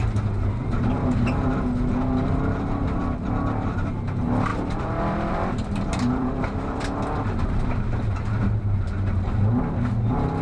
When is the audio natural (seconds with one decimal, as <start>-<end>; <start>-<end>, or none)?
0.0-4.5; 8.6-10.4